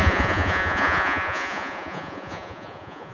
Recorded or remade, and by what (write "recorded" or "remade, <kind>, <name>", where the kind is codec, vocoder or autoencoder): remade, vocoder, Vocos